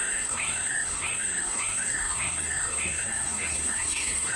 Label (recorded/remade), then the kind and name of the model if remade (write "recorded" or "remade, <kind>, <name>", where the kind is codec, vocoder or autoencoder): remade, codec, SNAC